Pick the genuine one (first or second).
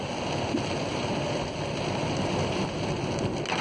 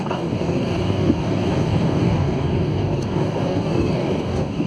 first